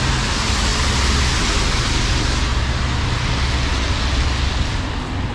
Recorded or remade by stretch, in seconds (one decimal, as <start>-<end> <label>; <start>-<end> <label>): 0.0-5.3 recorded